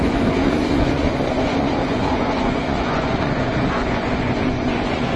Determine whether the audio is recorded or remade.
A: remade